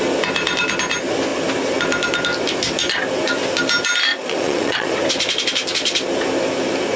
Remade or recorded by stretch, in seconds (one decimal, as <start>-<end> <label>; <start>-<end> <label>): 0.0-4.1 recorded; 4.1-4.9 remade; 4.9-7.0 recorded